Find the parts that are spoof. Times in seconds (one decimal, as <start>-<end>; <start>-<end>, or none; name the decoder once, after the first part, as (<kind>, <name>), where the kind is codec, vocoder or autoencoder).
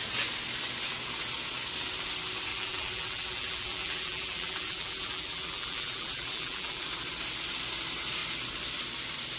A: 2.5-6.8 (vocoder, BigVGAN v2)